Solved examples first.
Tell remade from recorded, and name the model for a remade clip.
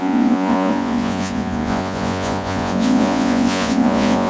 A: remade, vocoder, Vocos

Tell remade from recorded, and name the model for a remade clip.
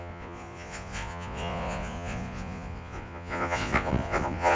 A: remade, vocoder, Vocos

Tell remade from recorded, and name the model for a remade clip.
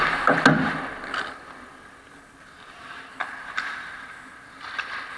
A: recorded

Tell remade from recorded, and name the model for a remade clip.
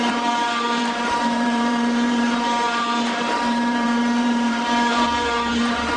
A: remade, vocoder, BigVGAN v2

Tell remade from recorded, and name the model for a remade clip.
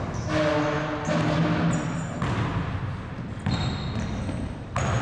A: recorded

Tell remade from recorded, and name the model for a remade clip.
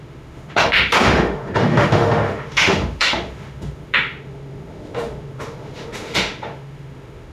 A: remade, autoencoder, DAC-VAE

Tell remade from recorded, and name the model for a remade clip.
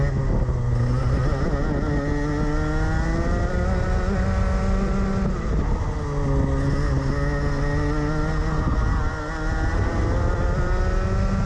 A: recorded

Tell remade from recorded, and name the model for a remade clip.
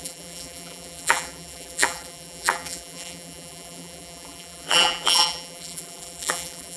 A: remade, vocoder, BigVGAN v2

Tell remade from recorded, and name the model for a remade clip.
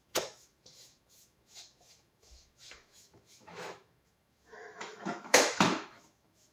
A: remade, autoencoder, DAC-VAE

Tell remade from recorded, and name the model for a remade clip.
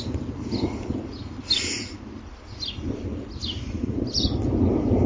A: recorded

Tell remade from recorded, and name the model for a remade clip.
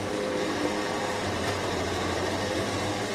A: remade, vocoder, BigVGAN v2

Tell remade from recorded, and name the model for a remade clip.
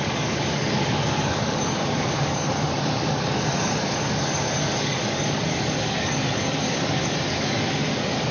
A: remade, codec, DAC